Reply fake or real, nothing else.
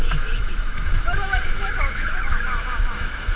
fake